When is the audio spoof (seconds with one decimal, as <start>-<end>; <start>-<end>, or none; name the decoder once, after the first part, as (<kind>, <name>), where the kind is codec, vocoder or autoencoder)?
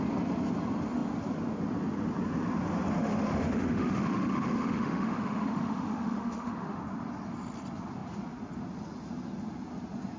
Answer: 3.0-6.8 (autoencoder, DAC-VAE)